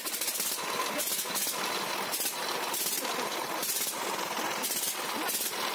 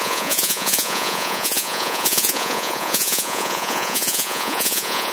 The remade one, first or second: second